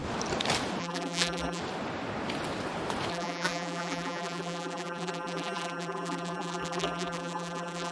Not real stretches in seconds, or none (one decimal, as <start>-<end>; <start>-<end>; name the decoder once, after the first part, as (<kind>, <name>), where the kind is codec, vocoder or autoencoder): 0.8-1.6 (vocoder, BigVGAN v2); 3.1-7.9